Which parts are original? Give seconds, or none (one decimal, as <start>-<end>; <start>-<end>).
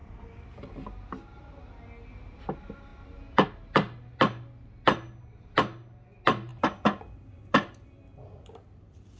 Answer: 0.0-9.2